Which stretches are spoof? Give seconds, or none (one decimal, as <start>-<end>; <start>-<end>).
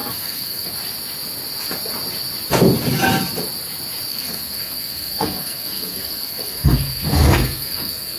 0.0-0.7; 4.1-8.2